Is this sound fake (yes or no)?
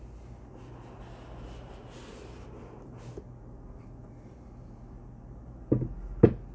no